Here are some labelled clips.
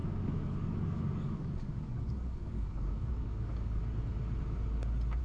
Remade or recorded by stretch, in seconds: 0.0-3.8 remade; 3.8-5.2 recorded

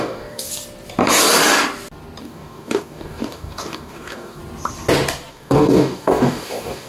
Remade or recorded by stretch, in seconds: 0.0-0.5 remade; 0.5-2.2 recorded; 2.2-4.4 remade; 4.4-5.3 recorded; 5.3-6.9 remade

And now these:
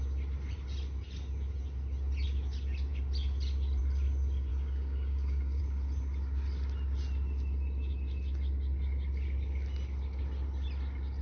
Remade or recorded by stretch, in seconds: 0.0-4.5 recorded; 4.5-5.6 remade; 5.6-11.2 recorded